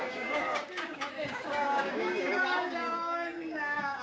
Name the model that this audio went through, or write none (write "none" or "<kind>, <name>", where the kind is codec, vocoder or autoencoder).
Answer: codec, DAC